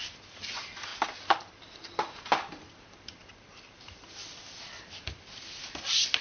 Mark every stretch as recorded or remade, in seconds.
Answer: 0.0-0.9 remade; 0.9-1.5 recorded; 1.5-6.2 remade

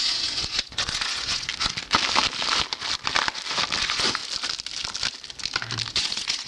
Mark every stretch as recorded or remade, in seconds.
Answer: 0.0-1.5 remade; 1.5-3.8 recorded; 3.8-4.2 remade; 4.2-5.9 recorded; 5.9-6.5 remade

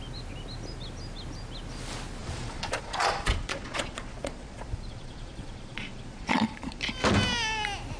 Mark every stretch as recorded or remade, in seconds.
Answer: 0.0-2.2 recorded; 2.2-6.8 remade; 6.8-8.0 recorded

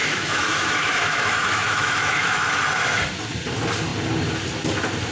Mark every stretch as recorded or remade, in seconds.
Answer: 0.0-2.5 remade; 2.5-5.1 recorded

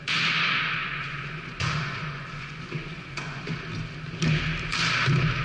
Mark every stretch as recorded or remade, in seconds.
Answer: 0.0-0.8 recorded; 0.8-3.5 remade; 3.5-5.4 recorded

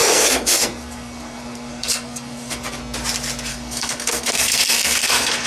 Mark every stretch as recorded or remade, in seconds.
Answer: 0.0-2.8 remade; 2.8-3.5 recorded; 3.5-5.5 remade

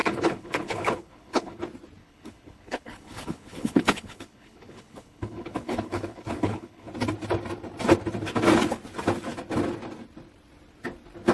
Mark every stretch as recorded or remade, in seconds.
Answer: 0.0-1.6 remade; 1.6-2.0 recorded; 2.0-6.9 remade; 6.9-11.3 recorded

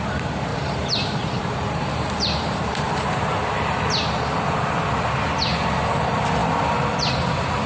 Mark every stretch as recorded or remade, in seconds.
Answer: 0.0-0.5 recorded; 0.5-3.0 remade; 3.0-7.7 recorded